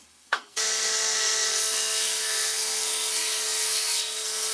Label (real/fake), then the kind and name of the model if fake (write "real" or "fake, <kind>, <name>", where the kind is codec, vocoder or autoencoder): fake, codec, SNAC